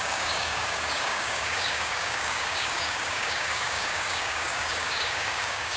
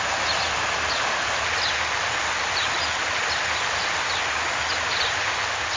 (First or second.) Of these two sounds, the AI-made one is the first